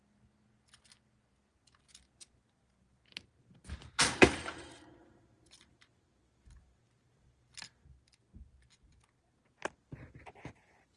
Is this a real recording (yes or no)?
yes